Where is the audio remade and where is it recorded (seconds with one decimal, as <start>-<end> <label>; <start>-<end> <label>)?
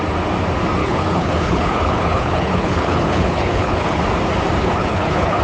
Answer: 0.0-0.8 recorded; 0.8-4.0 remade; 4.0-4.6 recorded; 4.6-5.4 remade